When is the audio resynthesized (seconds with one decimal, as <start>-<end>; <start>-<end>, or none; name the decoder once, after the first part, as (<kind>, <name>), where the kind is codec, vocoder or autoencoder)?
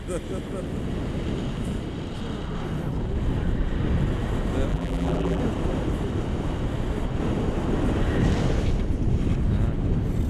4.7-5.4 (vocoder, BigVGAN v2)